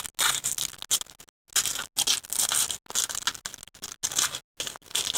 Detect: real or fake real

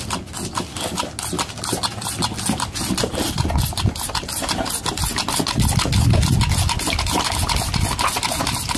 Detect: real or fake real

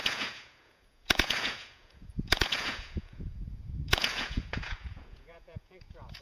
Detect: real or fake fake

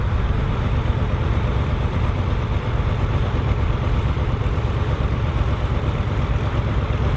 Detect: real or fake fake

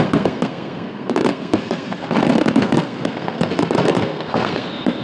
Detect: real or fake fake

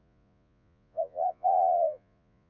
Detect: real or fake fake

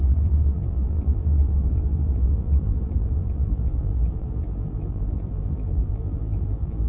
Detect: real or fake fake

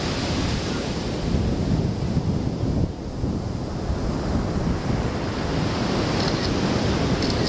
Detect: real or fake real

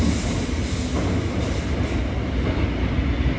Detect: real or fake real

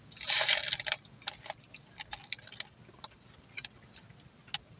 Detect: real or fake real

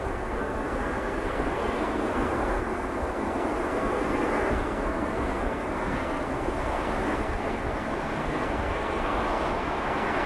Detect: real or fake fake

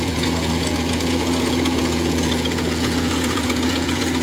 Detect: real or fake fake